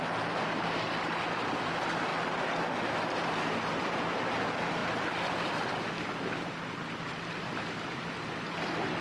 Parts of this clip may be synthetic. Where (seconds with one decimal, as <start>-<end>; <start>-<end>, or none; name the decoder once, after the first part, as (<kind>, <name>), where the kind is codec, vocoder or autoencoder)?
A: none